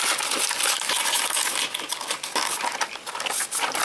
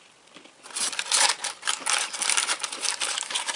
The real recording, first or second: first